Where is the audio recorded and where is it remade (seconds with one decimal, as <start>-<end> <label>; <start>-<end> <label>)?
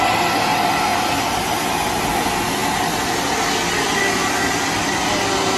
0.0-5.6 recorded